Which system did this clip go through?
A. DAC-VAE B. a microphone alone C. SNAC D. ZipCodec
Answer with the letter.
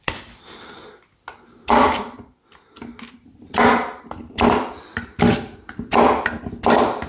B